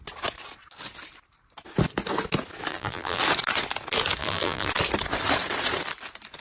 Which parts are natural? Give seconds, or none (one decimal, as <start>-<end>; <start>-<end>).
0.0-2.7; 3.2-4.2; 4.7-6.4